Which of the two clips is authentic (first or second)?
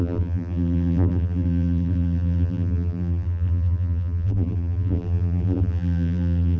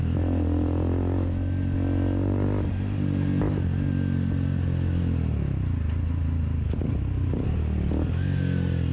second